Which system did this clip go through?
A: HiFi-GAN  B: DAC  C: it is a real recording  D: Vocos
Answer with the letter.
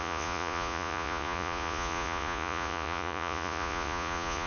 D